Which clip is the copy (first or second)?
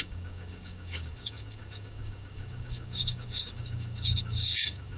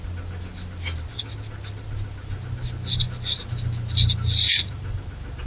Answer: first